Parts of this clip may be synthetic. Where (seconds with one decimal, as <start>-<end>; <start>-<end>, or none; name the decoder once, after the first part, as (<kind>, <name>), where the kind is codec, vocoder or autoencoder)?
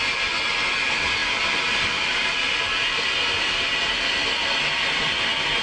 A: none